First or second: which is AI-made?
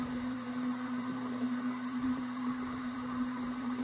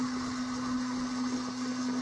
first